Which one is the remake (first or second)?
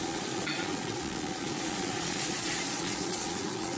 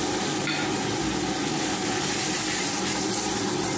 first